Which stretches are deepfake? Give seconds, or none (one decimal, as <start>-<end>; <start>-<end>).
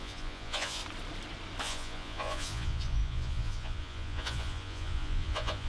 0.0-0.8; 1.6-5.7